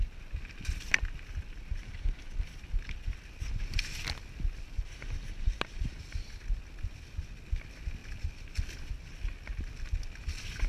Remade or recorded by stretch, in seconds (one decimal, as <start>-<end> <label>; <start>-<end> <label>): 0.0-8.0 recorded; 8.0-8.9 remade; 8.9-10.7 recorded